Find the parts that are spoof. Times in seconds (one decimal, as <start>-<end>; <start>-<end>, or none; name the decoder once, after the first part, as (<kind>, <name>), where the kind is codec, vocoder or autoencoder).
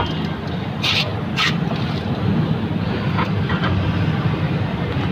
none